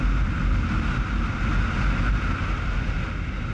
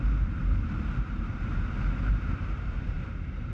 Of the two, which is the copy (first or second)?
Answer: second